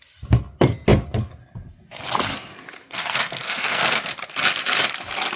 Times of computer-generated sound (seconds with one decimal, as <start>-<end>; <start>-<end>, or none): 2.8-4.1